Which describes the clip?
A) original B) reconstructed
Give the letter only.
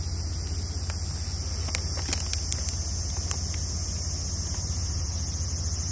A